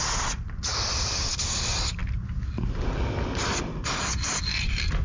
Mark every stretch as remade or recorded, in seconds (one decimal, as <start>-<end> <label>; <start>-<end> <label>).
0.0-5.0 recorded